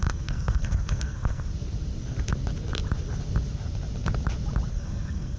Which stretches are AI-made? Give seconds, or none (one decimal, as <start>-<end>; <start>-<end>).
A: 0.0-1.5; 4.7-5.4